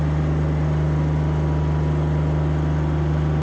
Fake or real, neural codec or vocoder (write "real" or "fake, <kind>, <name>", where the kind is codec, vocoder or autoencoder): real